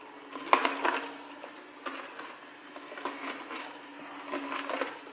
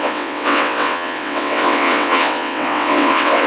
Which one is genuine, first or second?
first